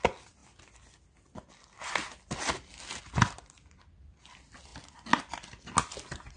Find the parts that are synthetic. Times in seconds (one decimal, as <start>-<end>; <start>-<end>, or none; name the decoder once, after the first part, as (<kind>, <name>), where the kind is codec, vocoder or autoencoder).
none